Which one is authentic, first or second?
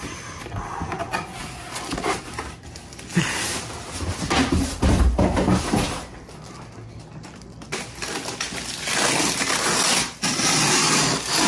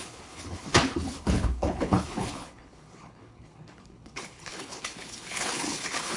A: first